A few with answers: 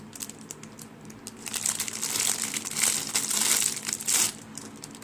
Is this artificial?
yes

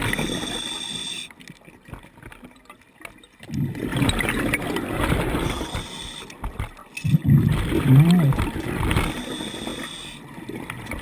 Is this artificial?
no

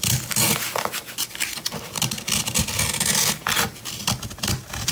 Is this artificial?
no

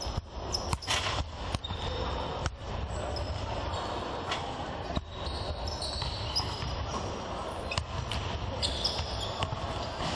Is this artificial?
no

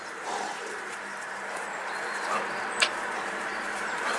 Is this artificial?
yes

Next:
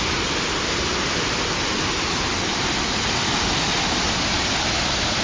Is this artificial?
no